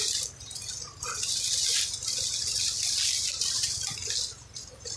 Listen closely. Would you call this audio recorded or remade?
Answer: recorded